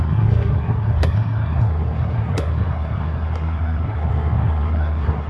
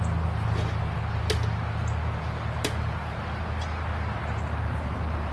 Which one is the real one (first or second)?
second